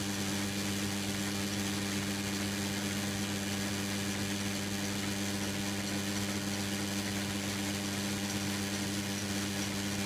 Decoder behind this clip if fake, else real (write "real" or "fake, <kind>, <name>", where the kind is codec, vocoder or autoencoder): real